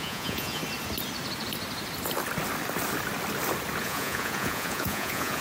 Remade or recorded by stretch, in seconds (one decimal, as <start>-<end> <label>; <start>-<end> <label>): 0.0-0.6 remade; 0.6-3.8 recorded; 3.8-5.4 remade